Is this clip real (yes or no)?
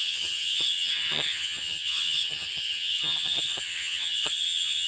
no